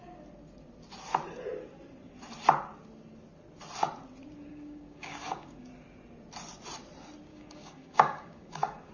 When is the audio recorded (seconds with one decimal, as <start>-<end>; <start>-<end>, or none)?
0.0-4.5; 5.7-7.3